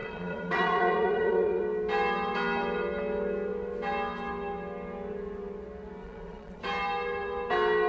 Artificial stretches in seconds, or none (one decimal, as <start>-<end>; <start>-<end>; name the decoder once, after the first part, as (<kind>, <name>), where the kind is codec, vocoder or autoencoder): 0.0-1.6 (vocoder, Vocos); 6.0-6.6